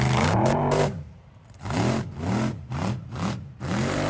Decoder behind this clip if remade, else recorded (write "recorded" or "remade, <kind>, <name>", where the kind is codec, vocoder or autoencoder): remade, vocoder, BigVGAN v2